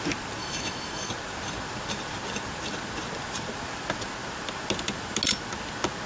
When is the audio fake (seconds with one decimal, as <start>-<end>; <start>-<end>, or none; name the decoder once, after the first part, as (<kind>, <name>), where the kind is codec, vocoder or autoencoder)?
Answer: 0.4-1.1 (autoencoder, DAC-VAE)